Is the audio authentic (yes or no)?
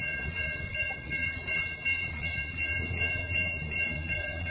no